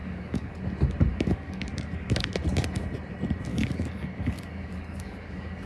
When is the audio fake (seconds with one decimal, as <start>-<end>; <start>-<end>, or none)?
0.0-0.6; 1.1-2.3; 3.5-5.7